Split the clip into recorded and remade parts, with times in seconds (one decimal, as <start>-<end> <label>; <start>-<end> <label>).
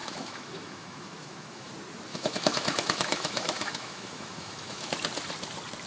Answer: 0.0-1.7 remade; 1.7-2.1 recorded; 2.1-4.9 remade; 4.9-5.9 recorded